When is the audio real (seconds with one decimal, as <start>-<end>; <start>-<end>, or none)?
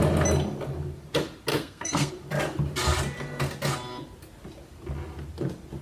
0.0-1.5; 2.1-5.8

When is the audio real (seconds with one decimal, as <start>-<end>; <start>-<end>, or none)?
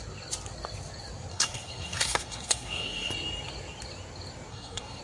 0.0-1.3; 3.1-4.5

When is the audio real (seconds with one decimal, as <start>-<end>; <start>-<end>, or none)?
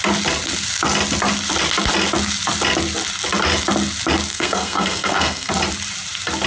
0.0-4.3; 5.5-6.5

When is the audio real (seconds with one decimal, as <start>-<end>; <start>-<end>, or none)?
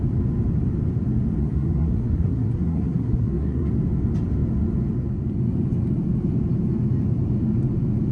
0.0-1.4; 3.7-8.1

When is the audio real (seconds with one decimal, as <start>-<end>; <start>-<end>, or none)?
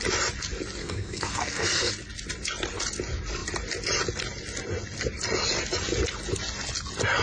0.0-0.8; 1.9-7.2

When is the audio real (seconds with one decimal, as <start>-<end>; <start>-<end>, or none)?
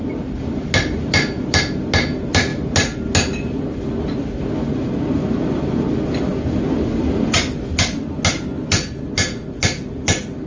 0.0-10.5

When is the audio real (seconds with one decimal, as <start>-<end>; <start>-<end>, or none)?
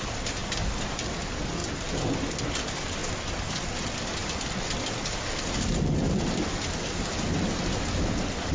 0.0-8.5